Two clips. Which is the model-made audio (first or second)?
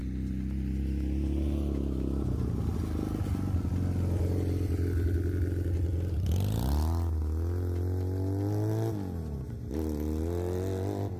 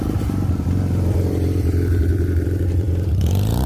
second